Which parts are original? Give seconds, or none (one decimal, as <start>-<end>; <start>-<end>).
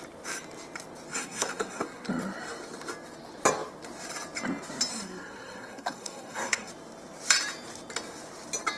0.0-1.1; 2.1-4.9; 6.7-8.8